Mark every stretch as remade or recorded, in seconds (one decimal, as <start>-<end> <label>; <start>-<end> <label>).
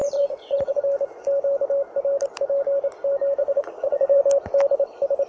0.0-0.8 remade; 0.8-3.4 recorded; 3.4-4.2 remade; 4.2-5.3 recorded